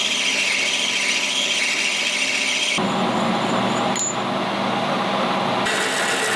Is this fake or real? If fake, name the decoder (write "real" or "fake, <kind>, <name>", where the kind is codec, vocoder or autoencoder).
real